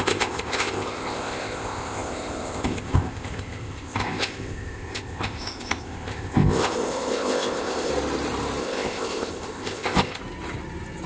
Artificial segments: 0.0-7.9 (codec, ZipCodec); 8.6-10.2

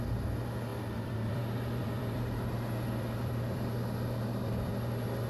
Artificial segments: 0.7-1.4 (vocoder, BigVGAN v2); 1.8-4.7

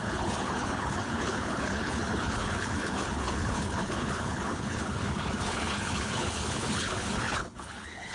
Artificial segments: 0.0-8.1 (codec, HILCodec)

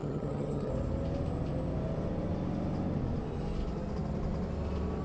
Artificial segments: 0.0-0.7 (vocoder, HiFi-GAN)